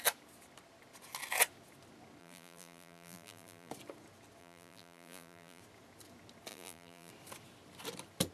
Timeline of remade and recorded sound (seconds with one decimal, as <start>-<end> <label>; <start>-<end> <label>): 0.0-2.2 recorded; 2.2-3.7 remade; 3.7-4.4 recorded; 4.4-5.6 remade; 5.6-6.5 recorded; 6.5-7.1 remade; 7.1-8.3 recorded